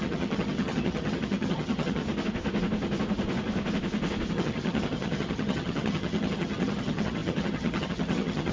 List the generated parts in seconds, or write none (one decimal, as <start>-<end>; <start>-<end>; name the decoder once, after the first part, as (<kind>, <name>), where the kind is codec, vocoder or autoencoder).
0.0-2.0 (vocoder, HiFi-GAN); 4.3-8.5